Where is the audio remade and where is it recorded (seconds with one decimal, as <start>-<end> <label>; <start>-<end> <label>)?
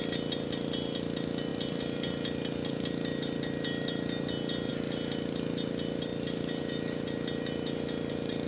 0.0-8.5 recorded